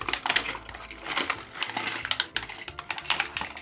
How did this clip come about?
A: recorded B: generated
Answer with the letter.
A